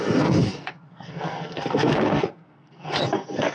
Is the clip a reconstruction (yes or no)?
yes